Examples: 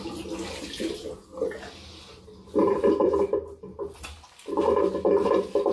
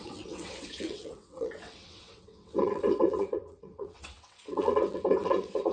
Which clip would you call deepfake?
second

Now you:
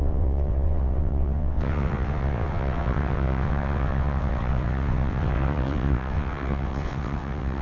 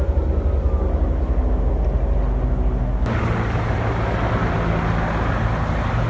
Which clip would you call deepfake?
first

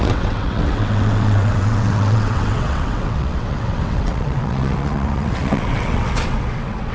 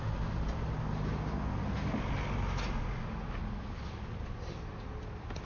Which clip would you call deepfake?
first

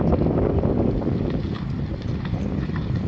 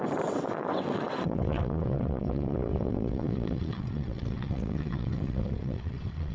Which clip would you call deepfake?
second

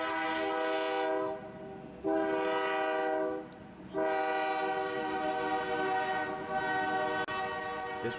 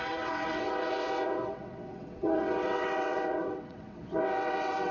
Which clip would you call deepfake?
second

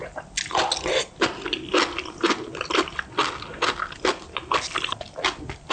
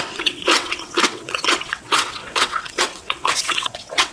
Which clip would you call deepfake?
second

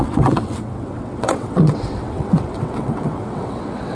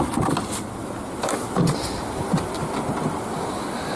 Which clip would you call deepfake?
first